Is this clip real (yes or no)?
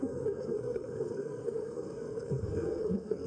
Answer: no